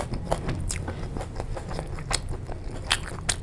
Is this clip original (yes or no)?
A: yes